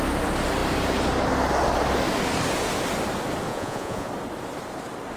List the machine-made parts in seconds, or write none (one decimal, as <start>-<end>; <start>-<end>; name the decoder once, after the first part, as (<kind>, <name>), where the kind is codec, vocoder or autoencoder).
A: 3.5-4.1 (vocoder, Vocos)